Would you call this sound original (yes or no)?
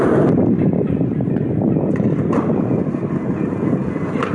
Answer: yes